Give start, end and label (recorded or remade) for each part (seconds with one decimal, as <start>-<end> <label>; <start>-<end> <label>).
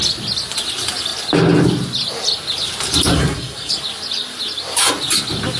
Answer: 0.0-3.1 recorded; 3.1-3.7 remade; 3.7-5.6 recorded